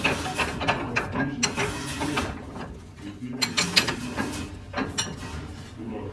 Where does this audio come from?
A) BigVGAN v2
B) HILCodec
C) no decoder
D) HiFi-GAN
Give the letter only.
C